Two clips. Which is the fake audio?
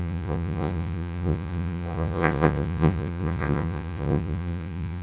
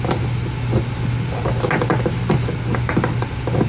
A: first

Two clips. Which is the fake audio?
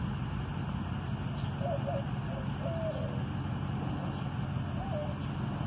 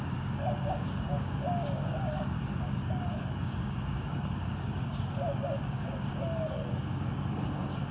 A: second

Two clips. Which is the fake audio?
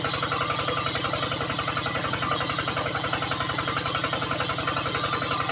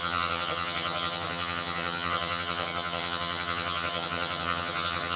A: second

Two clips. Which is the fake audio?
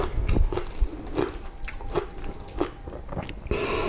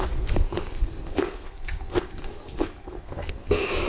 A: second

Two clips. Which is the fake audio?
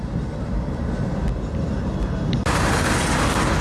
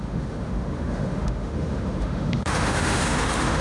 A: second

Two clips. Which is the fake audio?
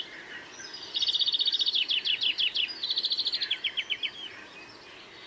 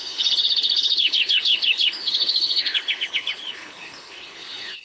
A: second